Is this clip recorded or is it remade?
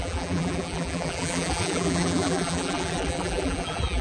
remade